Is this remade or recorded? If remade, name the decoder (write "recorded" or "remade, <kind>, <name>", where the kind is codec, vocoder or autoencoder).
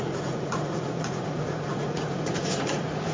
remade, vocoder, Vocos